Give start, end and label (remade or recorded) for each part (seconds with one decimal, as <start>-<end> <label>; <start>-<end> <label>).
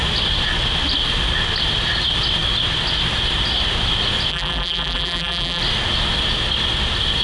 0.0-4.3 recorded; 4.3-5.6 remade; 5.6-7.2 recorded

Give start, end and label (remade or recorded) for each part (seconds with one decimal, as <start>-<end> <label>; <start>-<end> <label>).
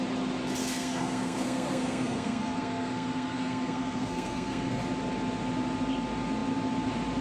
0.0-0.6 recorded; 0.6-4.8 remade; 4.8-7.2 recorded